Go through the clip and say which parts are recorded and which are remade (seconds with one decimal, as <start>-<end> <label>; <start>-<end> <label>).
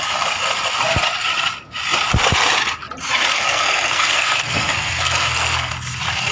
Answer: 0.0-3.3 recorded; 3.3-5.7 remade; 5.7-6.3 recorded